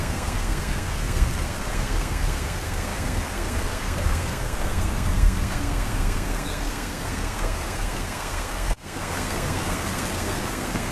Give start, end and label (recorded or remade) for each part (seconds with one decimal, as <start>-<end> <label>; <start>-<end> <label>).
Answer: 0.0-10.9 remade